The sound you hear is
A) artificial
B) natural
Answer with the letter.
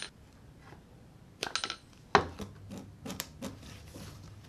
B